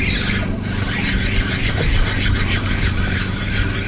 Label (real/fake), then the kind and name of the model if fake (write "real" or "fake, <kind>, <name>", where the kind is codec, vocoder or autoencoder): fake, vocoder, BigVGAN v2